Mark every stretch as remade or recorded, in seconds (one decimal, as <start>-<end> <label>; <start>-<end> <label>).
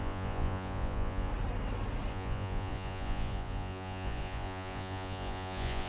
0.0-1.3 remade; 1.3-2.1 recorded; 2.1-5.9 remade